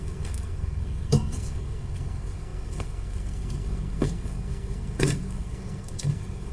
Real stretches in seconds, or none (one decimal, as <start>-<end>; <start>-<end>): none